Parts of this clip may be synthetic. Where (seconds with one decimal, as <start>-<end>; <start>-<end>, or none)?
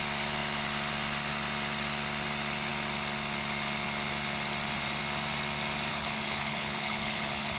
5.9-7.6